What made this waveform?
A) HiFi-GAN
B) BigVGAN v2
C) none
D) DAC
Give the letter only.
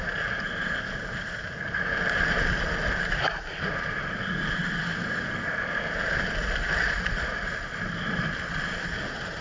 C